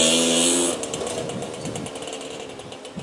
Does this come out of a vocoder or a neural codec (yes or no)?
no